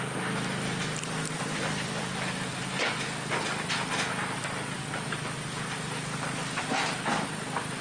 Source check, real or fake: real